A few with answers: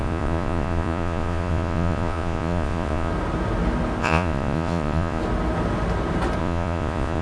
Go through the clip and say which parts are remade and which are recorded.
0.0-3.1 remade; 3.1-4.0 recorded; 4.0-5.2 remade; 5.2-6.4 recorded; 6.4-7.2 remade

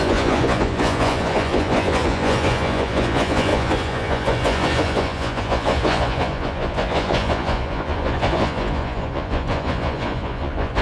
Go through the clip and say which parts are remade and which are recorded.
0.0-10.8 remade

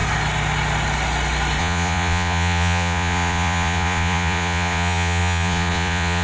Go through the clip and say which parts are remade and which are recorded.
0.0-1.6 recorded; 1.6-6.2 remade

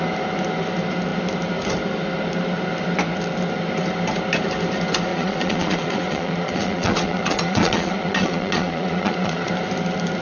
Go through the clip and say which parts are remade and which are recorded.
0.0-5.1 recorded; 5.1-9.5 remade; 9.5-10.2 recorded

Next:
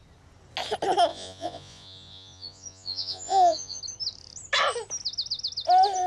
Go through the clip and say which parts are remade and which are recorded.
0.0-1.1 recorded; 1.1-3.8 remade; 3.8-6.1 recorded